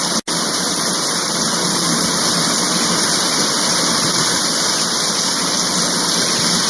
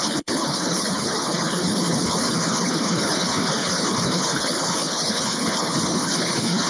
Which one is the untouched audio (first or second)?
first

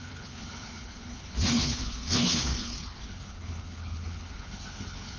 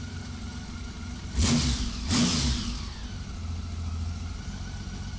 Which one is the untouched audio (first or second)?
second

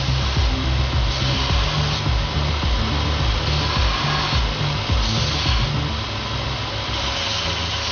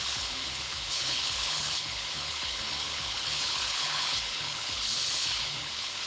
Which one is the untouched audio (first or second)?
first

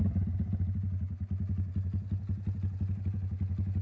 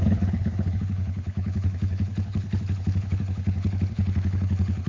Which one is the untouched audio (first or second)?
first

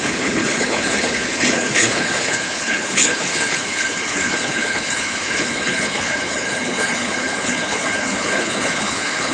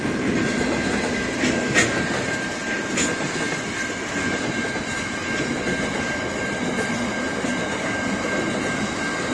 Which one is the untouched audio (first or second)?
second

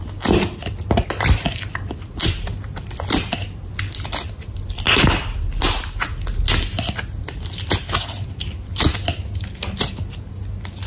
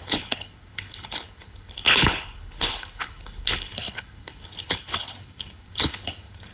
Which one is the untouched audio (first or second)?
first